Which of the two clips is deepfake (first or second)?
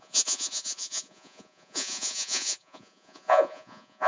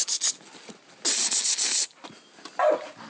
first